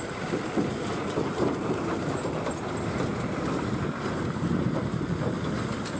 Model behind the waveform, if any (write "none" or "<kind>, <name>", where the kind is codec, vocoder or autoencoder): none